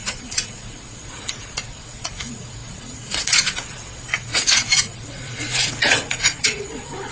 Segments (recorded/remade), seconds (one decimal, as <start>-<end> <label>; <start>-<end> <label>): 0.0-7.1 remade